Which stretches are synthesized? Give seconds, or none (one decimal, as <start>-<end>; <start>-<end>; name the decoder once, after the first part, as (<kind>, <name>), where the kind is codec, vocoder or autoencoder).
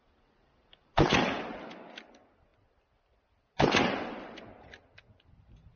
none